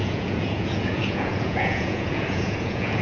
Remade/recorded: remade